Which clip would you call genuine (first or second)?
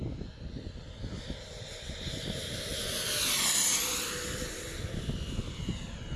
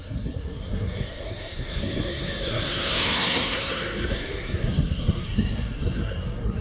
first